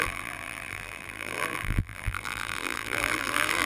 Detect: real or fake fake